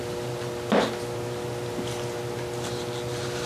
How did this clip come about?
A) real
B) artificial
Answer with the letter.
A